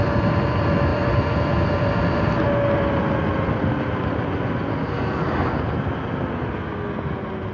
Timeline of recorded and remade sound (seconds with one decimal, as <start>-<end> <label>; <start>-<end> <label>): 0.0-7.5 recorded